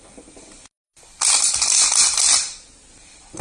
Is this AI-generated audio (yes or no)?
no